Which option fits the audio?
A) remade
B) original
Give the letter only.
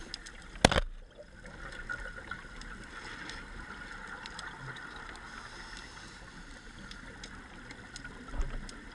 B